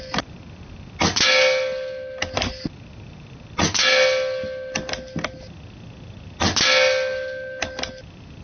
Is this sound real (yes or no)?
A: yes